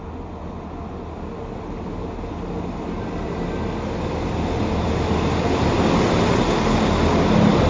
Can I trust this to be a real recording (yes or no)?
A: yes